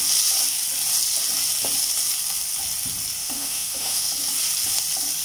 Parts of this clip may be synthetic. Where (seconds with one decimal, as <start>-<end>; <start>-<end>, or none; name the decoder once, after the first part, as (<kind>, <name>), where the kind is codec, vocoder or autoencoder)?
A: 3.2-4.1 (autoencoder, DAC-VAE)